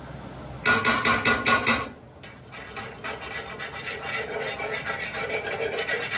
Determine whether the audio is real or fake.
real